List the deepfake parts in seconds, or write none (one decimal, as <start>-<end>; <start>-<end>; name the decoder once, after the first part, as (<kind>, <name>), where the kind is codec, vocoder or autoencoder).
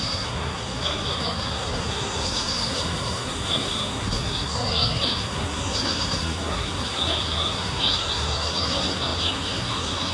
0.0-10.1 (codec, SNAC)